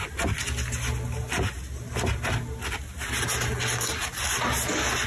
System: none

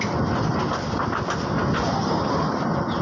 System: none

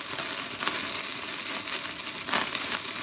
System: none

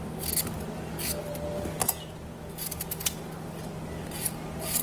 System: none